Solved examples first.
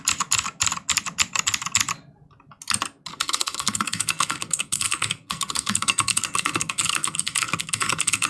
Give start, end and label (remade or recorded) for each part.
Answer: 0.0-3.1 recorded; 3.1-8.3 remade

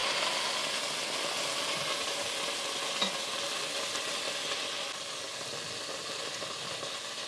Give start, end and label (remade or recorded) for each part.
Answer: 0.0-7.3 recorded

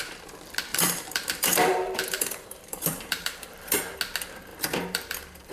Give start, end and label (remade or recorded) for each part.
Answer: 0.0-0.7 recorded; 0.7-3.8 remade; 3.8-4.5 recorded; 4.5-5.5 remade

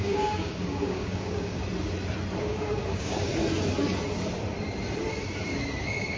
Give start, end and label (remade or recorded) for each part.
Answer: 0.0-1.6 remade; 1.6-2.4 recorded; 2.4-3.3 remade; 3.3-5.8 recorded; 5.8-6.2 remade